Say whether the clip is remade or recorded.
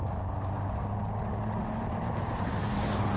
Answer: recorded